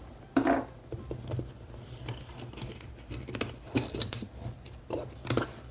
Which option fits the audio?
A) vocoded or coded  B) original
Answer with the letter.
B